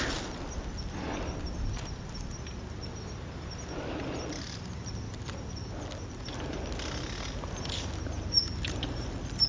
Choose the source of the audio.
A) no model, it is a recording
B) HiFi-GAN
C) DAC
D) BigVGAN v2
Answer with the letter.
A